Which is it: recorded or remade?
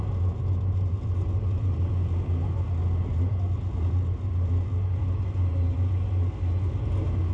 recorded